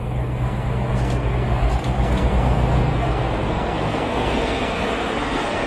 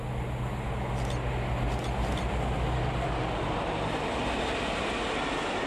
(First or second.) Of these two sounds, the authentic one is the second